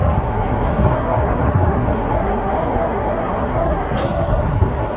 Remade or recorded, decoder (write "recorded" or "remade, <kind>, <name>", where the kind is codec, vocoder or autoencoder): remade, codec, SNAC